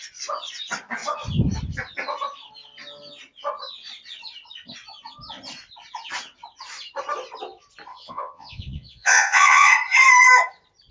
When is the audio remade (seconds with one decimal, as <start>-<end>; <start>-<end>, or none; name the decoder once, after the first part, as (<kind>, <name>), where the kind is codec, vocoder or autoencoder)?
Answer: 7.9-9.7 (vocoder, Vocos)